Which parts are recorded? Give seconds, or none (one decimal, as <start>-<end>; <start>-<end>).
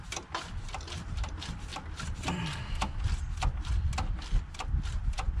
1.7-4.9